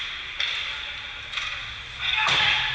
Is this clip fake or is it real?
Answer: real